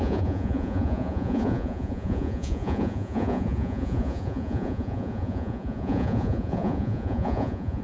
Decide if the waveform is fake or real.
fake